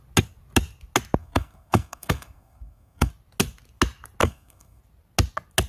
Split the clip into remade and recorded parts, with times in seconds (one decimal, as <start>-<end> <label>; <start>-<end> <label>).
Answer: 0.0-1.2 recorded; 1.2-3.1 remade; 3.1-4.2 recorded; 4.2-4.8 remade; 4.8-5.7 recorded